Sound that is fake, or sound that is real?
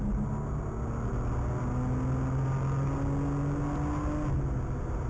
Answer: real